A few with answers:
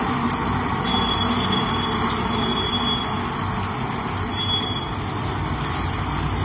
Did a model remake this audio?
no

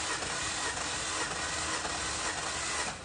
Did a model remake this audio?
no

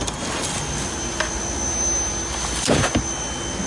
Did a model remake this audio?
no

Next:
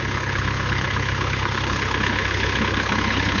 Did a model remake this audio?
yes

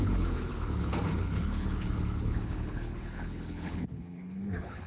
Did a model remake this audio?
yes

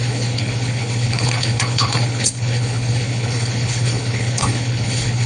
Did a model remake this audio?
yes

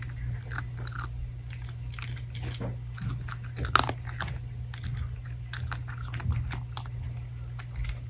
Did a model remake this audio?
no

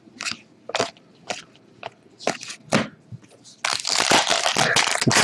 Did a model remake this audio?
no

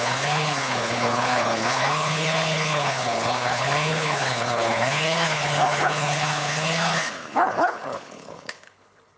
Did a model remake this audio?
yes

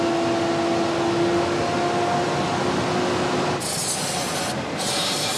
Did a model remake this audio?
no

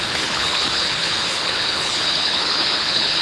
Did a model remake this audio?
yes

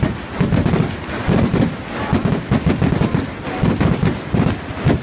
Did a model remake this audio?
no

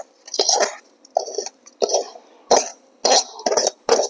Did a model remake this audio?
no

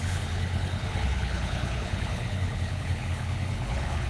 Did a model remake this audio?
yes